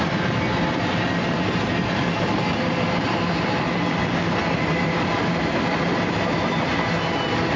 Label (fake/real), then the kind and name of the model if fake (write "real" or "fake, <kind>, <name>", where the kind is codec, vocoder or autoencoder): real